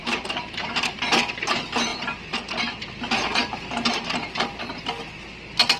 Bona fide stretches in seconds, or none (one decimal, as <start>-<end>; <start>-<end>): 1.3-1.9; 4.8-5.8

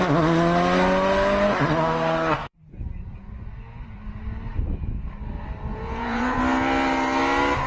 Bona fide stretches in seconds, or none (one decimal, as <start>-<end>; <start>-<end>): 0.0-2.4; 3.3-5.7; 6.4-7.7

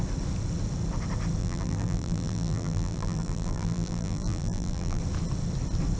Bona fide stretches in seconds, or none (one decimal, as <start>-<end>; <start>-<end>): 0.0-1.4; 5.0-6.0

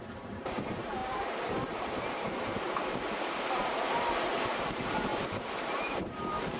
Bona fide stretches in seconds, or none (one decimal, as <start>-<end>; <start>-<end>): none